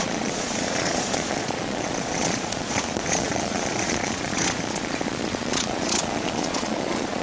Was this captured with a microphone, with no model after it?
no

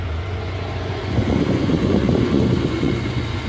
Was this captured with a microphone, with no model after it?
no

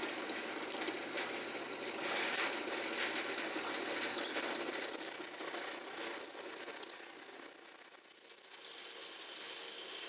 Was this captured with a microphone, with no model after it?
yes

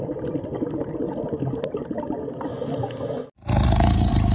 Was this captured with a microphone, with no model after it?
yes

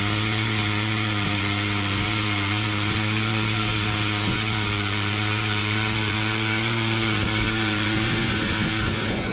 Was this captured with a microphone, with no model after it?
no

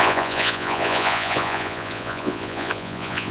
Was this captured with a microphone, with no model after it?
no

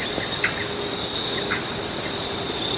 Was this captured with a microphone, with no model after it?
yes